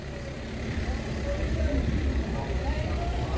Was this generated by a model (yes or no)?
yes